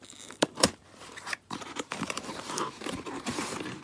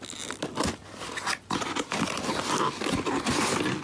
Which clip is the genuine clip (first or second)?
second